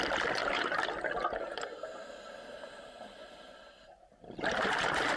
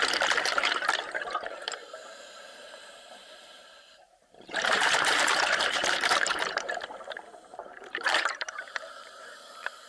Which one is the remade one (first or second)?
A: second